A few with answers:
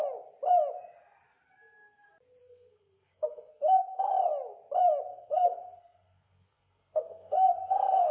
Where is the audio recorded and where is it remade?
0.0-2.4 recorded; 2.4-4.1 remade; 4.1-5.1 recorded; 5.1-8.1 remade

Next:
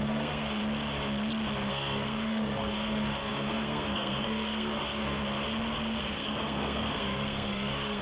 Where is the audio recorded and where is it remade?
0.0-0.6 remade; 0.6-1.7 recorded; 1.7-5.2 remade; 5.2-6.0 recorded; 6.0-8.0 remade

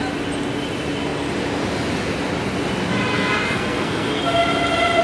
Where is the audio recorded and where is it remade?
0.0-3.1 recorded; 3.1-4.2 remade; 4.2-5.0 recorded

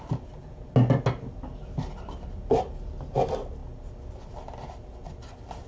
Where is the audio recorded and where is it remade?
0.0-5.7 recorded

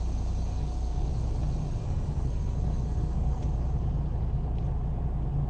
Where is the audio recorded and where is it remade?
0.0-0.5 recorded; 0.5-1.1 remade; 1.1-1.8 recorded; 1.8-3.4 remade; 3.4-5.5 recorded

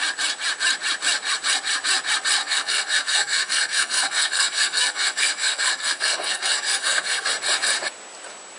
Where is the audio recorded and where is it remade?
0.0-2.4 recorded; 2.4-7.3 remade; 7.3-8.6 recorded

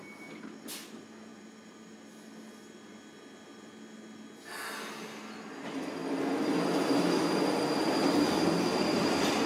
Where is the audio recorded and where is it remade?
0.0-9.5 recorded

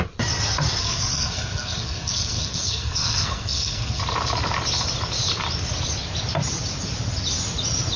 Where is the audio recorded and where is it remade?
0.0-0.8 recorded; 0.8-4.0 remade; 4.0-8.0 recorded